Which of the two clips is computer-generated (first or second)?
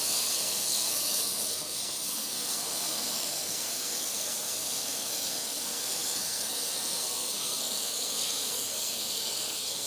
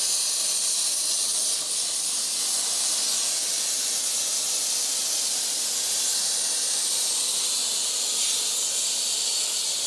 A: first